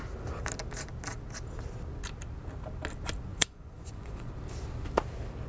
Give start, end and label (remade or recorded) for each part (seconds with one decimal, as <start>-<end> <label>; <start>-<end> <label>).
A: 0.0-3.3 recorded; 3.3-4.3 remade; 4.3-5.5 recorded